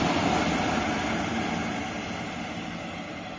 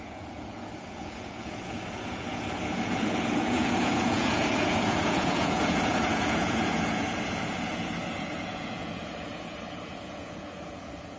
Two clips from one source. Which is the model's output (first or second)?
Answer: second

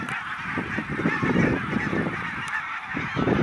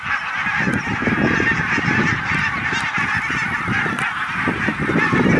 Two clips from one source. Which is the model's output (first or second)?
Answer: first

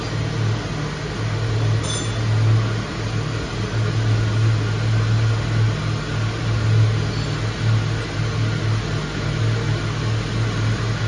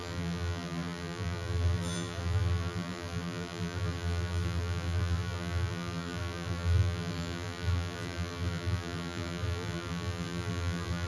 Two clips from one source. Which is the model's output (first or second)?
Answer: second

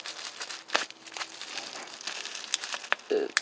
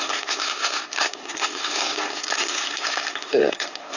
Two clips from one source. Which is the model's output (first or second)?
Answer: second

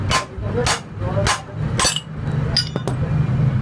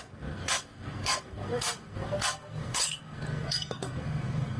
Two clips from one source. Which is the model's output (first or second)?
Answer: second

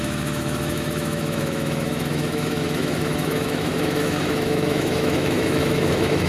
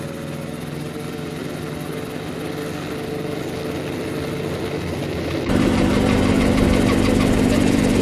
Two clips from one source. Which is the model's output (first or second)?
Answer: first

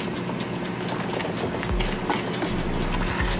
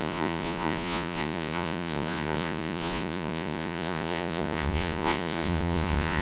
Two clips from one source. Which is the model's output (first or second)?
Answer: second